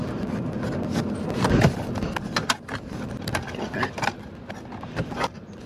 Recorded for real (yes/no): yes